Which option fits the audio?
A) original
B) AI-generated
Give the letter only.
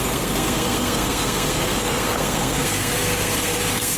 B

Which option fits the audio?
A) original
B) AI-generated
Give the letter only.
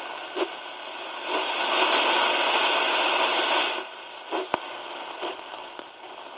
A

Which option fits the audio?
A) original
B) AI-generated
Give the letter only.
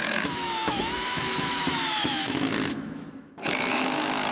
B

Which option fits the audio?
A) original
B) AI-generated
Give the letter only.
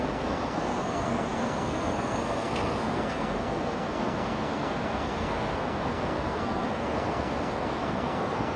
B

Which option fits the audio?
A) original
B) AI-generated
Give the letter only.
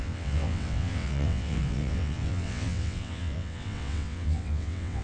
B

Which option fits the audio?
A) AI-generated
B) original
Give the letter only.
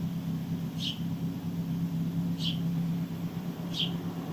B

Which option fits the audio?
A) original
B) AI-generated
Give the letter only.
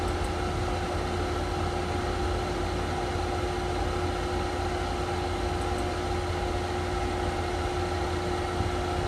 A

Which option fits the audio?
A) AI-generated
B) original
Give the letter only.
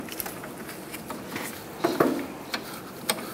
B